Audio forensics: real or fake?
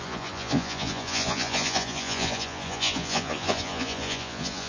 fake